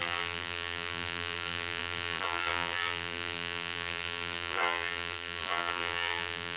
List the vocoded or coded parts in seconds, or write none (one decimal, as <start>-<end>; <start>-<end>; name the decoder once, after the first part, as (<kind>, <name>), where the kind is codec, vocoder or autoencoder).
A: 0.0-6.6 (vocoder, BigVGAN v2)